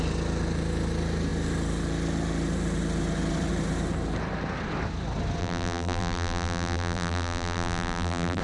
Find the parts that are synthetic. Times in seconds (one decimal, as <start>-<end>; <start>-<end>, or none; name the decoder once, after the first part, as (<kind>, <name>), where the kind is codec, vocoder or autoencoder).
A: 5.4-8.4 (vocoder, BigVGAN v2)

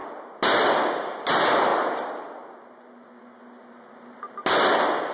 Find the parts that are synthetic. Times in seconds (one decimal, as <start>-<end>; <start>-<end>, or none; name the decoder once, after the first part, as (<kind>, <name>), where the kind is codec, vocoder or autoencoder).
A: 0.9-1.7 (vocoder, BigVGAN v2)

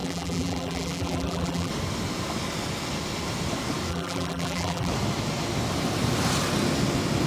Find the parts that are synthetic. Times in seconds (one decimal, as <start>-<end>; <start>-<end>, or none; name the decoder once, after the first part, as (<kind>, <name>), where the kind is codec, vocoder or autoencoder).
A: 0.0-1.7 (vocoder, BigVGAN v2); 3.9-4.9

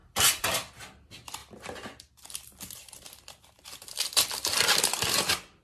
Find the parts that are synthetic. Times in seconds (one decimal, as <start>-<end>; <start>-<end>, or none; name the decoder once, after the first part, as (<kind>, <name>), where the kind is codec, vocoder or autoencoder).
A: 0.0-0.7 (vocoder, BigVGAN v2)

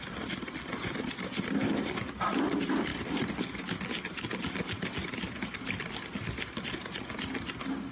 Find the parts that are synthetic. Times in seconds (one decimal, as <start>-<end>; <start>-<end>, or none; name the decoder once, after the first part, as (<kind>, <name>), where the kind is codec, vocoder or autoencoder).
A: none